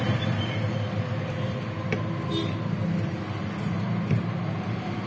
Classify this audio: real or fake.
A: real